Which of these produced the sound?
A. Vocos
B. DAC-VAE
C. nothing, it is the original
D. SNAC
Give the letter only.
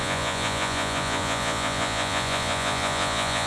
A